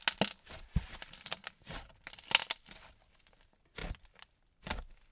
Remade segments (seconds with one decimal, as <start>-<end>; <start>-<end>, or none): none